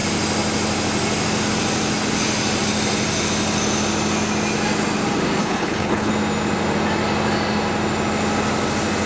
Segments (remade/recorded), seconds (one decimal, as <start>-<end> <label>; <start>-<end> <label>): 0.0-5.4 recorded; 5.4-6.1 remade; 6.1-9.1 recorded